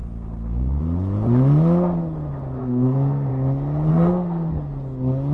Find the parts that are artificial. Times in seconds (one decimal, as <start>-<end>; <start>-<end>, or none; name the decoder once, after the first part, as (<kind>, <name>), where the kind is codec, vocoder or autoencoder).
0.0-0.8 (codec, SNAC); 2.6-3.3; 3.9-4.5